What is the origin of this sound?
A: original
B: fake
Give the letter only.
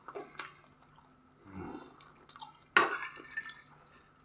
A